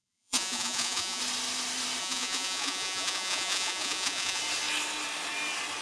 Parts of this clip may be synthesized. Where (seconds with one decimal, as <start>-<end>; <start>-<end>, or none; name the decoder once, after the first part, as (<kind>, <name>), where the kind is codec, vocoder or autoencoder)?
0.0-1.2 (vocoder, Vocos); 2.0-4.4